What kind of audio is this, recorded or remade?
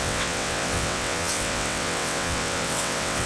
remade